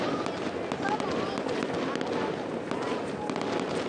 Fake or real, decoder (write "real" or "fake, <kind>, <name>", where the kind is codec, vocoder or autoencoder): real